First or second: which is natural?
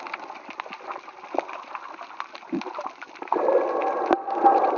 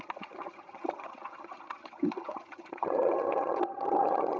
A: first